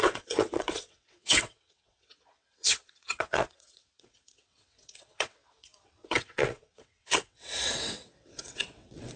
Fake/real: fake